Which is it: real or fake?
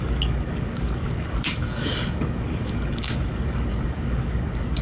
fake